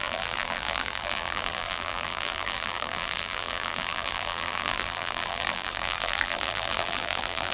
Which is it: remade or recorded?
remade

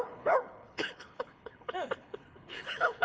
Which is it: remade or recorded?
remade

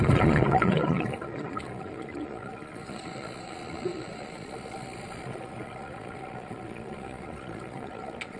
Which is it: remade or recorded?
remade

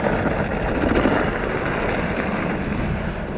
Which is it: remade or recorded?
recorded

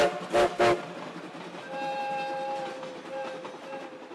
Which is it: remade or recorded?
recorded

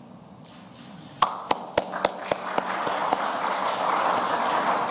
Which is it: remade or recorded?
recorded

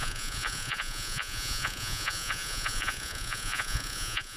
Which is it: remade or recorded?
remade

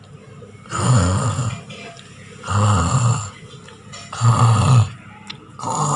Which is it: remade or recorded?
recorded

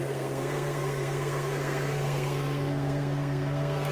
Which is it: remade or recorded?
remade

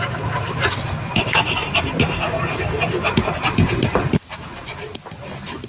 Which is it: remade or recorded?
remade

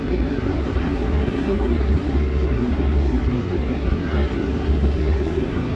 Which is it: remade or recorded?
remade